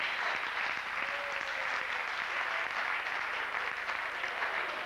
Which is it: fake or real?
real